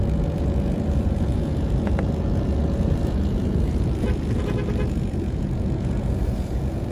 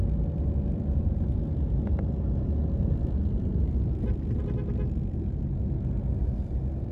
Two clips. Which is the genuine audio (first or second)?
second